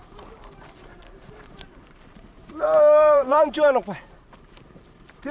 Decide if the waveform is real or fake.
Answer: fake